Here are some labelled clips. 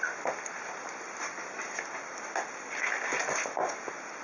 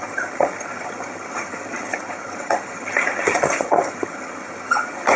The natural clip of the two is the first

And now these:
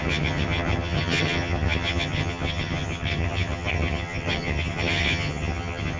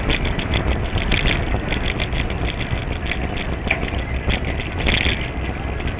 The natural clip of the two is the second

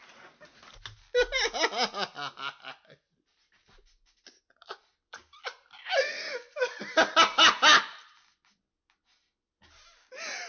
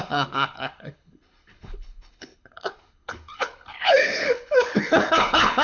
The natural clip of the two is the first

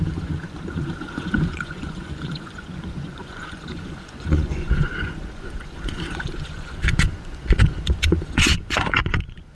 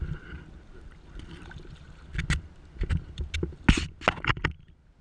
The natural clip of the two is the second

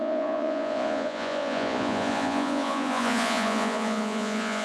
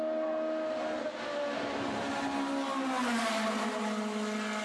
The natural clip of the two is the second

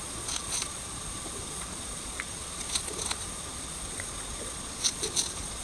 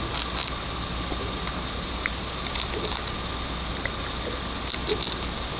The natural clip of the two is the second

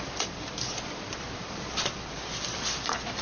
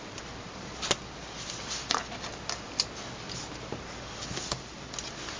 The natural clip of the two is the second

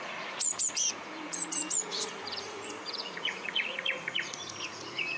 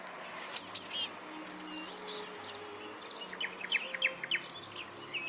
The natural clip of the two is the second